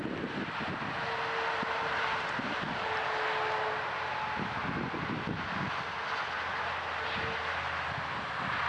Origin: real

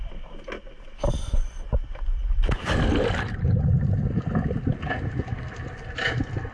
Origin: real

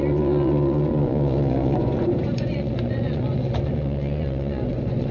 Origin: fake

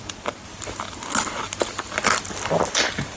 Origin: real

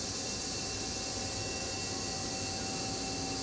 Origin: real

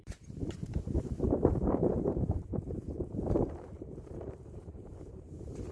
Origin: fake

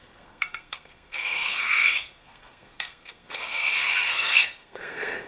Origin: fake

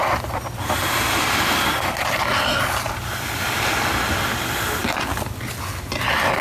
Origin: real